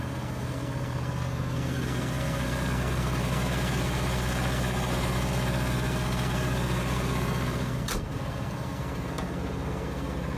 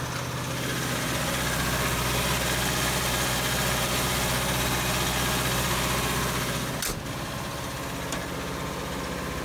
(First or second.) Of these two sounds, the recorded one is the second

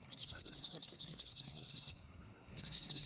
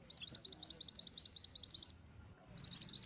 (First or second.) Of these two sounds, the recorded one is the second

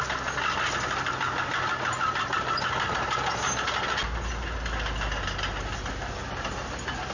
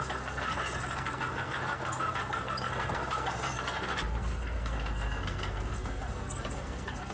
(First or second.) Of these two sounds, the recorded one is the first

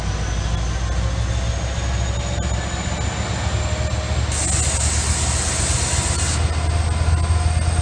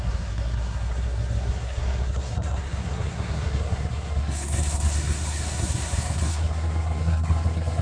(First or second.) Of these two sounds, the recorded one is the first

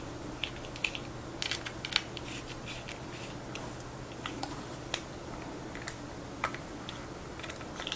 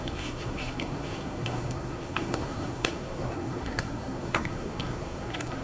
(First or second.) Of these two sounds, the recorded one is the first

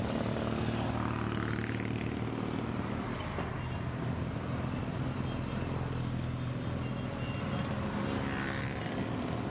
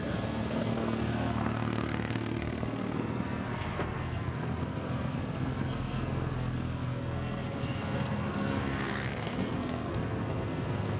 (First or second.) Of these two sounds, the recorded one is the first